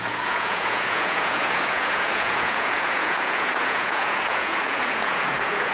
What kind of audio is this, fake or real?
fake